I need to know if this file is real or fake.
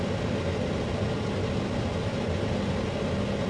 real